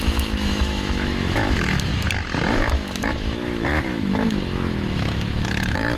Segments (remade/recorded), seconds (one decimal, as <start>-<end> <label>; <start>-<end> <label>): 0.0-1.9 remade; 1.9-2.5 recorded; 2.5-6.0 remade